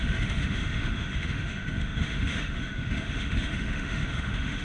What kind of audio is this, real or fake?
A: fake